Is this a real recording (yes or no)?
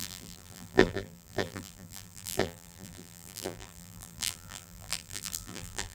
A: no